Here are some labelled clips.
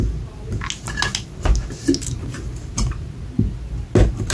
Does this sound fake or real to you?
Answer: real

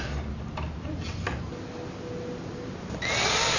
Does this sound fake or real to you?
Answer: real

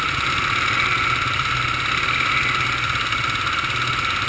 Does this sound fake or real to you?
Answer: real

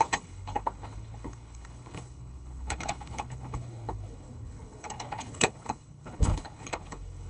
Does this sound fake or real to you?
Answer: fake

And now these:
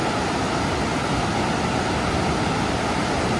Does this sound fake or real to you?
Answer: real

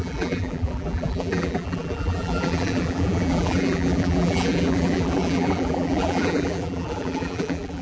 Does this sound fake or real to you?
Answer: fake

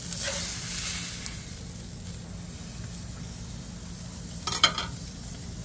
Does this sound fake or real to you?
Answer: real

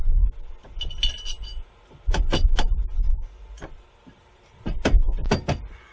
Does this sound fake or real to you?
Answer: real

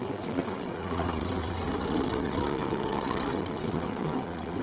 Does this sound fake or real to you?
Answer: fake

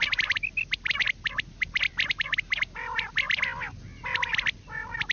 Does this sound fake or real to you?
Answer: real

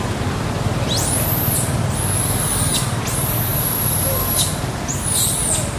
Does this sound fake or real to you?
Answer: real